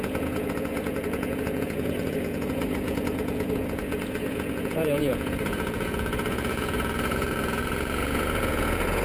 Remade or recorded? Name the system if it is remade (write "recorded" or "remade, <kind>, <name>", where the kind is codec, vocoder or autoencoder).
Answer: remade, vocoder, Vocos